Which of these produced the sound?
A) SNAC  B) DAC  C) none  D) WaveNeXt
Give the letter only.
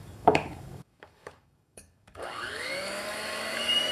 B